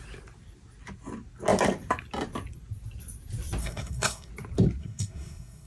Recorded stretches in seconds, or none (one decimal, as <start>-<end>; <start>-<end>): 0.0-3.6; 4.3-4.8